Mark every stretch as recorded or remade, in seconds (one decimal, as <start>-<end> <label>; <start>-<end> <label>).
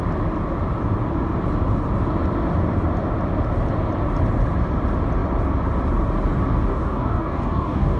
0.0-6.7 recorded; 6.7-8.0 remade